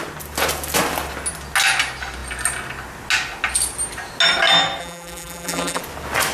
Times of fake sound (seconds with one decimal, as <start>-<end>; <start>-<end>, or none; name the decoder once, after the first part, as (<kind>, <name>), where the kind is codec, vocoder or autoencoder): 4.8-5.8 (vocoder, BigVGAN v2)